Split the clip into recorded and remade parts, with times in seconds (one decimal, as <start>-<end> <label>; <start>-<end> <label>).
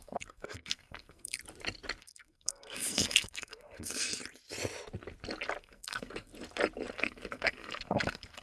0.0-1.4 remade; 1.4-2.0 recorded; 2.0-4.2 remade; 4.2-5.6 recorded; 5.6-6.3 remade; 6.3-6.9 recorded; 6.9-8.4 remade